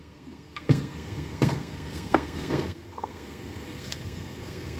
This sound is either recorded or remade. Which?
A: remade